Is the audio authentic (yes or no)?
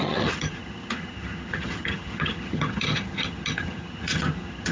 no